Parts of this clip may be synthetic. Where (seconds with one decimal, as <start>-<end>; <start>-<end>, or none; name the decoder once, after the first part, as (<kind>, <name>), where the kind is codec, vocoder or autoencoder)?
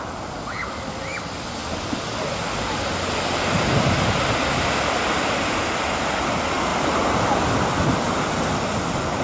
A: none